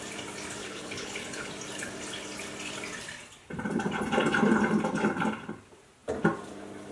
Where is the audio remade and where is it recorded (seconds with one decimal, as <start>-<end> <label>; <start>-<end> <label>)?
0.0-0.6 recorded; 0.6-1.5 remade; 1.5-6.9 recorded